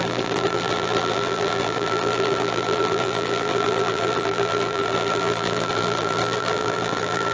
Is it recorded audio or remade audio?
remade